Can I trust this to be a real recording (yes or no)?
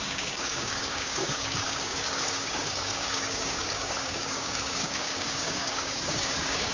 no